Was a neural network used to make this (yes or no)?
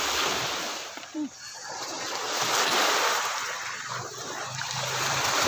yes